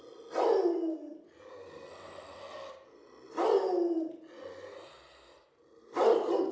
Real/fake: real